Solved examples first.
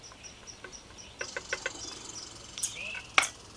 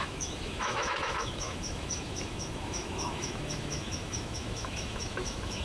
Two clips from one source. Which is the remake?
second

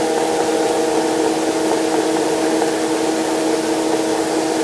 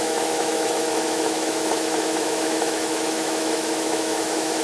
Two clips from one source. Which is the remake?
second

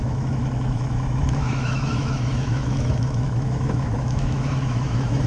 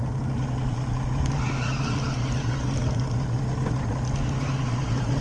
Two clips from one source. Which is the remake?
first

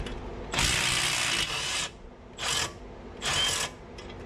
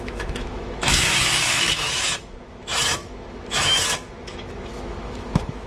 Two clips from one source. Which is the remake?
second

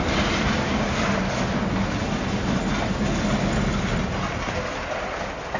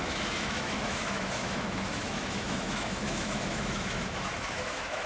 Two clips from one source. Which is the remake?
second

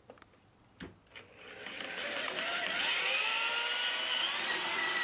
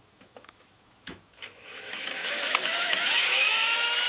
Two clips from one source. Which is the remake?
second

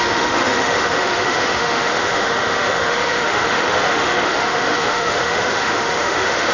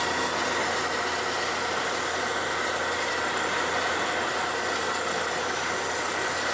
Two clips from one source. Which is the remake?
first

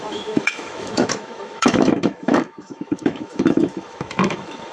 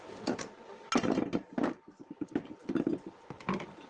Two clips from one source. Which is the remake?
first